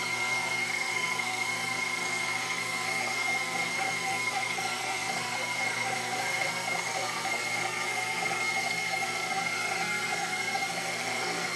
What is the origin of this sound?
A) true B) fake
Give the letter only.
B